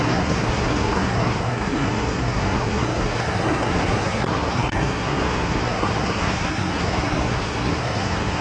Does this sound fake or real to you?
fake